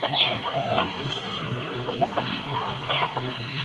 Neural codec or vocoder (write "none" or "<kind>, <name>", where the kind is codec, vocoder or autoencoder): codec, SNAC